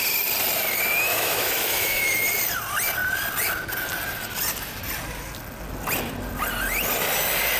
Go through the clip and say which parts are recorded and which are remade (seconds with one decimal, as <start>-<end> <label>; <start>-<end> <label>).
0.0-1.1 recorded; 1.1-2.2 remade; 2.2-7.6 recorded